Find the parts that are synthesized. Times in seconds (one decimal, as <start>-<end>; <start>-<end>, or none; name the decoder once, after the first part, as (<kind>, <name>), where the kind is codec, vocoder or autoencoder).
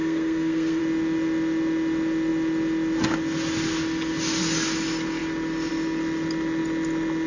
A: 0.0-0.8 (codec, SNAC)